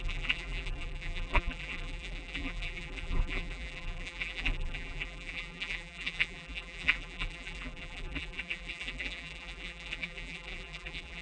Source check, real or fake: fake